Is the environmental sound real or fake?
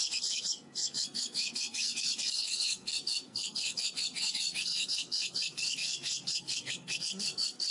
fake